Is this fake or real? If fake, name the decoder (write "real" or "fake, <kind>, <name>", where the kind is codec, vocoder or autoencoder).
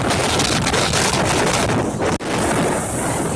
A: real